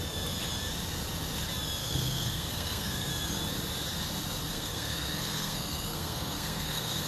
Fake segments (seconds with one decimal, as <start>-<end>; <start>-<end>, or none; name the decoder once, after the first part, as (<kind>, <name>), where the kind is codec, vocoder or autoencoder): 1.8-3.1 (codec, SNAC); 4.5-7.1